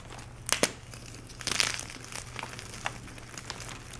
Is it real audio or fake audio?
real